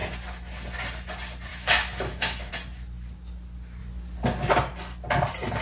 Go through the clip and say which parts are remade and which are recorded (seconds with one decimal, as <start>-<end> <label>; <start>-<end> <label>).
0.0-1.5 recorded; 1.5-2.5 remade; 2.5-5.6 recorded